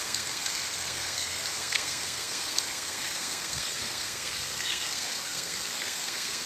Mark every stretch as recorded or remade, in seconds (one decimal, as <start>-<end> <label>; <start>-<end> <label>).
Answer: 0.0-6.5 remade